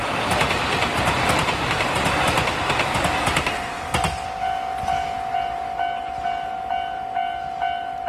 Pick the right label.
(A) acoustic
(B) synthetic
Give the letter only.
A